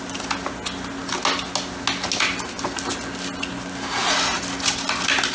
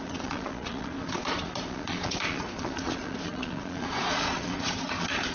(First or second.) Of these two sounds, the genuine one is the first